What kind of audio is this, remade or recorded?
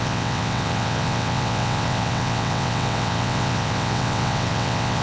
remade